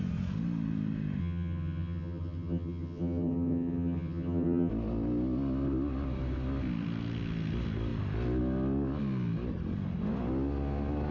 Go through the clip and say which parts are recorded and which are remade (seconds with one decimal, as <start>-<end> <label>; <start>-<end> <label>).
0.0-1.2 recorded; 1.2-4.7 remade; 4.7-11.1 recorded